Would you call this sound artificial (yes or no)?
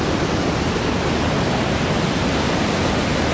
no